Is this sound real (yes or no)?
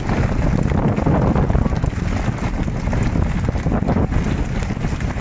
yes